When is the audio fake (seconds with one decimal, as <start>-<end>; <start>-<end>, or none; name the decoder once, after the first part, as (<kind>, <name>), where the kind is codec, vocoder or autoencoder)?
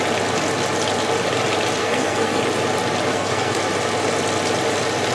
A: 1.8-2.4 (codec, SNAC); 3.1-3.6